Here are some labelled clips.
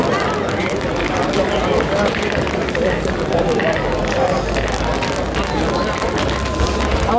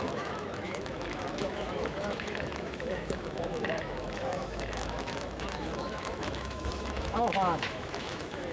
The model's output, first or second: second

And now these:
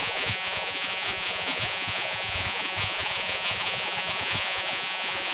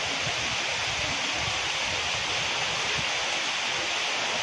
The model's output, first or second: first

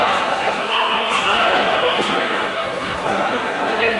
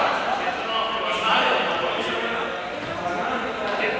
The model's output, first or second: first